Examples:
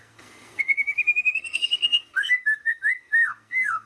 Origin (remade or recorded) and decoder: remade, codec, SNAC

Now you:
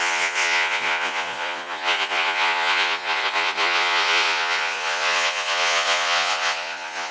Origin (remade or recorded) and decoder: remade, vocoder, Vocos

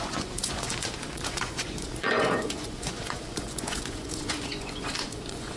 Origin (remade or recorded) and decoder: remade, vocoder, Vocos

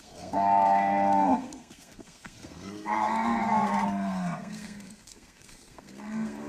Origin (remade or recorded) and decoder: remade, codec, SNAC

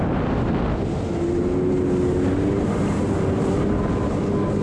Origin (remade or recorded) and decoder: recorded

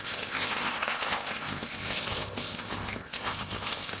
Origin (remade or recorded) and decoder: remade, codec, ZipCodec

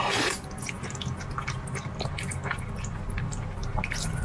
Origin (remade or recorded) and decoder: recorded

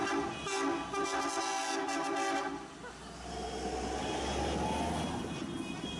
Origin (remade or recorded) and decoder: recorded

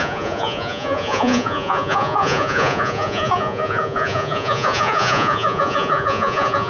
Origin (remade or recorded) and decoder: remade, vocoder, Vocos